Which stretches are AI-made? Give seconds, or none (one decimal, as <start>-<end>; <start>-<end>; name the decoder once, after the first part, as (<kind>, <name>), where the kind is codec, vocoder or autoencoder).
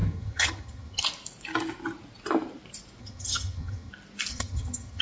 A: 0.0-1.0 (vocoder, HiFi-GAN); 3.0-3.9; 4.3-5.0